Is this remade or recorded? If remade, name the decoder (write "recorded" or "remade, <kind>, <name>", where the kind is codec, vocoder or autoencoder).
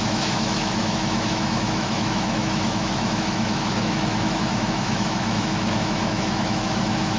remade, autoencoder, DAC-VAE